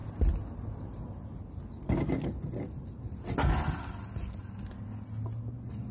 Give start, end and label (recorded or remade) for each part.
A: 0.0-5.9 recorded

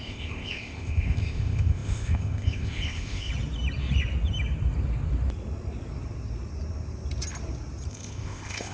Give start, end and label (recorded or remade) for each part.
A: 0.0-3.3 remade; 3.3-7.9 recorded; 7.9-8.7 remade

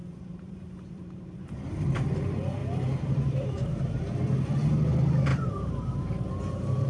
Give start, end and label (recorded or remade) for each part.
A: 0.0-1.4 remade; 1.4-2.6 recorded; 2.6-4.0 remade; 4.0-5.3 recorded; 5.3-6.9 remade